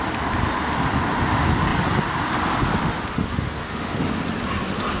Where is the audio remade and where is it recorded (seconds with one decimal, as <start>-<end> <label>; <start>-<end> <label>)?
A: 0.0-2.8 recorded; 2.8-4.1 remade; 4.1-5.0 recorded